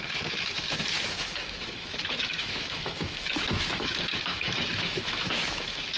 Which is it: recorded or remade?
remade